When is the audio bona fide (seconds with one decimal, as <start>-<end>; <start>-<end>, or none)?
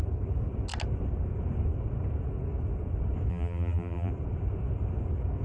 0.0-3.3; 4.1-5.4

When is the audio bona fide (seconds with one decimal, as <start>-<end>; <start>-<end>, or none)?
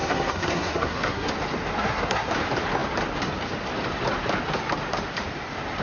1.3-1.8; 2.3-5.8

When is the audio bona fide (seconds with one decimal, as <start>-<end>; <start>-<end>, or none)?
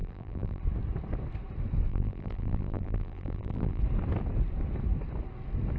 0.6-1.9; 3.8-5.8